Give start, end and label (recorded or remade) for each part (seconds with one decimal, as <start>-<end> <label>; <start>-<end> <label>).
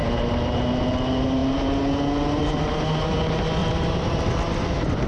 0.0-3.6 recorded; 3.6-4.3 remade; 4.3-5.1 recorded